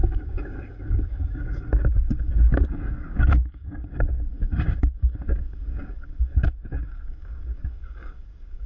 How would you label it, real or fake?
fake